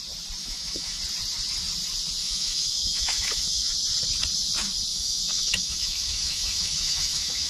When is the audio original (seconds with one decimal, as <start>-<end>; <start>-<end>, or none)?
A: 0.0-0.4; 1.0-2.2; 3.7-4.9